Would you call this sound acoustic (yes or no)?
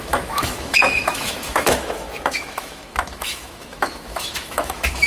no